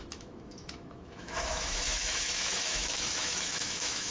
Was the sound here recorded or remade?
remade